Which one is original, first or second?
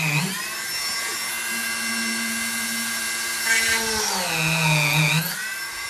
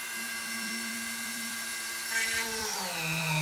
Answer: first